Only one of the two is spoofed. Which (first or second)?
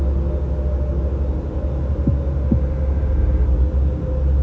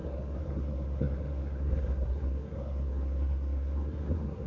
second